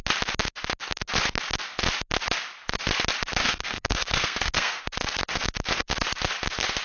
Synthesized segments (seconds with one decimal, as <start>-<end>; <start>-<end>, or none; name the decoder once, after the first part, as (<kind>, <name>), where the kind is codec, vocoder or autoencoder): 3.4-4.8 (codec, SNAC)